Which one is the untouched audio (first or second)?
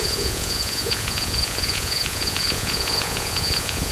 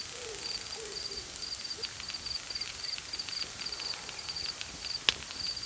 second